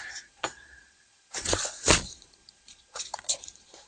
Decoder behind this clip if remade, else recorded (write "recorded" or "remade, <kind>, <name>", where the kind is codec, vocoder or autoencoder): remade, vocoder, Vocos